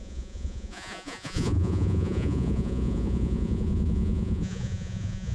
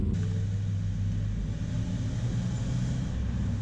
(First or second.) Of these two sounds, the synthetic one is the first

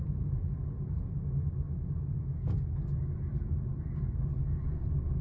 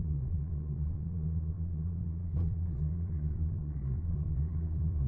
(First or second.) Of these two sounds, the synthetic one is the second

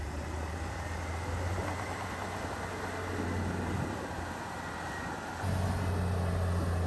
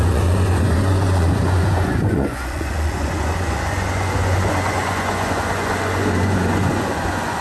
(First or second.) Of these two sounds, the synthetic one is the second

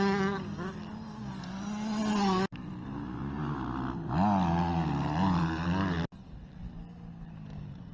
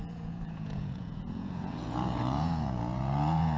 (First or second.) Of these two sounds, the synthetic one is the second